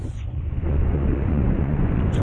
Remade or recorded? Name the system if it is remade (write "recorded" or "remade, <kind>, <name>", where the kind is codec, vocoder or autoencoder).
remade, vocoder, Vocos